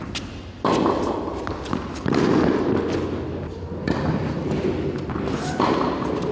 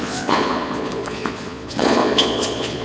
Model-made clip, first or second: second